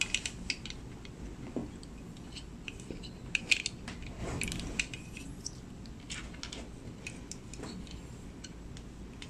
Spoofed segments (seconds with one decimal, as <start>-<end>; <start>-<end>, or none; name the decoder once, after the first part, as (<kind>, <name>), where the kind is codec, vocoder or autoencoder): none